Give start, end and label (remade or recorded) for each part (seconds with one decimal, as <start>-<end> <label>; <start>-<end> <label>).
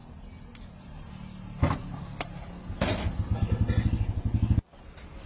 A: 0.0-5.3 recorded